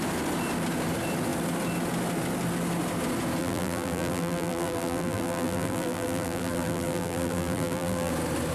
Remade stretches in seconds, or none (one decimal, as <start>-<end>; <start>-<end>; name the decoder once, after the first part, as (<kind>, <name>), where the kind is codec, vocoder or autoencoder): 3.4-8.1 (vocoder, BigVGAN v2)